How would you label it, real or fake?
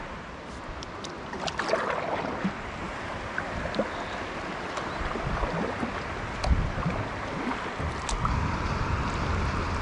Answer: real